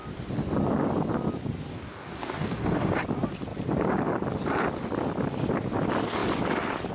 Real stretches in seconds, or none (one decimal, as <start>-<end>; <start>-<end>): 0.0-1.7; 2.9-6.9